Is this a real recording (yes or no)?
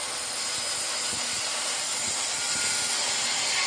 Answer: yes